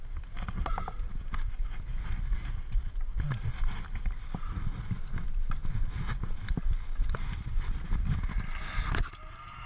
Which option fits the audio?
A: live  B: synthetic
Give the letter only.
A